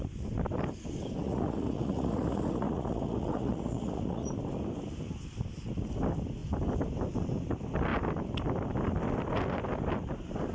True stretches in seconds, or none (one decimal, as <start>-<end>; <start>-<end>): 0.0-1.2; 4.3-10.5